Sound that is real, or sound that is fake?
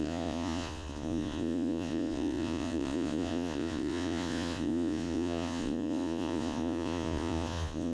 fake